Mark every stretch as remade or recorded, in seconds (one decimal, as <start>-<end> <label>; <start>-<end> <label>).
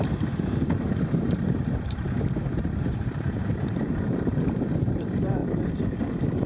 0.0-5.4 remade; 5.4-6.5 recorded